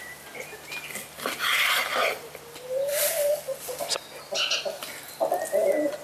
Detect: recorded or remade recorded